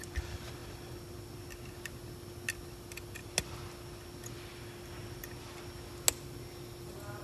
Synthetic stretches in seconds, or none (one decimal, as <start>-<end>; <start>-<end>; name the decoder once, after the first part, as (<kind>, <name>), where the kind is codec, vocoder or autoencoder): none